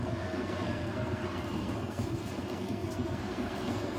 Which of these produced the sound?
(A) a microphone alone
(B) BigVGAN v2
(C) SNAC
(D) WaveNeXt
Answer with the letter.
C